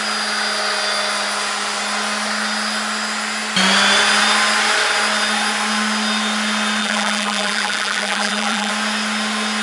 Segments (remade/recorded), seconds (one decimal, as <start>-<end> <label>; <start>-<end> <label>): 0.0-6.8 recorded; 6.8-8.7 remade; 8.7-9.6 recorded